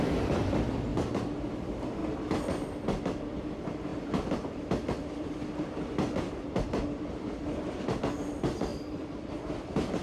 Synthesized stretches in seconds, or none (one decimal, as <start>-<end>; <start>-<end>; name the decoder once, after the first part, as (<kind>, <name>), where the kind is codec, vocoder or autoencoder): 0.9-1.5 (vocoder, BigVGAN v2); 3.9-8.0; 8.7-9.3